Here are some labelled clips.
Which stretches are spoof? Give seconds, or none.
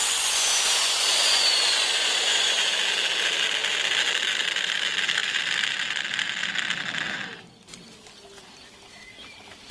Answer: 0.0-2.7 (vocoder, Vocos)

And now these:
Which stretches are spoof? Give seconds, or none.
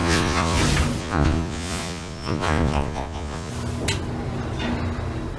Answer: 0.0-0.6 (vocoder, Vocos); 1.0-3.5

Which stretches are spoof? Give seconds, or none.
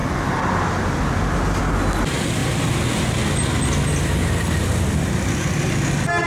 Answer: none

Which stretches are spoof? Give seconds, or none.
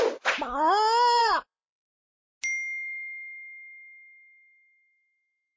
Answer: 1.2-1.9 (vocoder, Vocos)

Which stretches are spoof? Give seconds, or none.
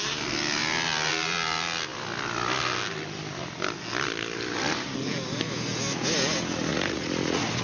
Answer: 6.7-7.6 (vocoder, Vocos)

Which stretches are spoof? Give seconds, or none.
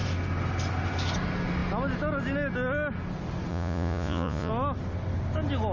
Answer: 3.5-4.5 (vocoder, Vocos)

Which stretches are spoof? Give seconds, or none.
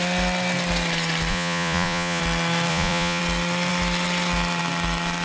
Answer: 1.3-2.2 (vocoder, Vocos); 2.7-3.2